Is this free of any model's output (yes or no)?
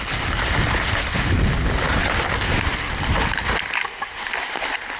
yes